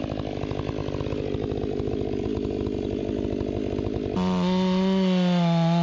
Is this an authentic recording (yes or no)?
yes